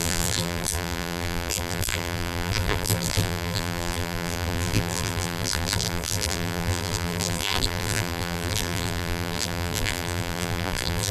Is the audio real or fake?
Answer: fake